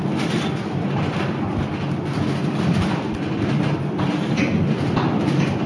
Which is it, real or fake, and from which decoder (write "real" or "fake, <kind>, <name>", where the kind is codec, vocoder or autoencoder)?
real